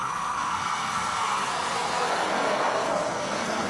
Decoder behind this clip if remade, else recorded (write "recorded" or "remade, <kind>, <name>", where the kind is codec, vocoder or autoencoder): remade, codec, SNAC